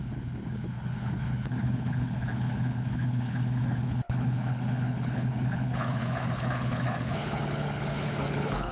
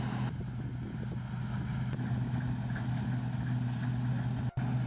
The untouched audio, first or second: second